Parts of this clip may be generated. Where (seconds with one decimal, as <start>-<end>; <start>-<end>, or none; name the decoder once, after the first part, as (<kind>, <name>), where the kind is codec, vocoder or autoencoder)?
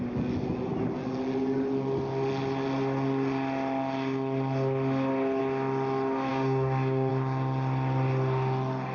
6.3-7.1 (codec, DAC)